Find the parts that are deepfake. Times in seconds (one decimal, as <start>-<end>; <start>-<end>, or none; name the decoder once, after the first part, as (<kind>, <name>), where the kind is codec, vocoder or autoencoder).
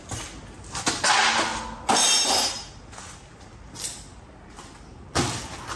none